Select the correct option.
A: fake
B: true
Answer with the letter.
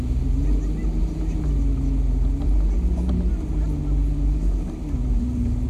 B